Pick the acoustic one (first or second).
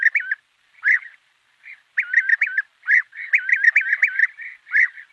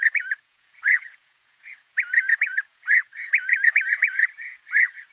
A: first